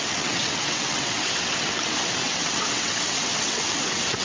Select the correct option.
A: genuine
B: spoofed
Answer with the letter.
B